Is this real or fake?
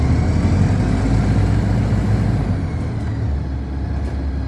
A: real